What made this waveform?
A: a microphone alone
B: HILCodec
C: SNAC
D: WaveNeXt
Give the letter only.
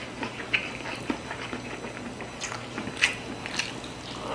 A